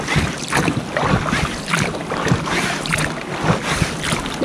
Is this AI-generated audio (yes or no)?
no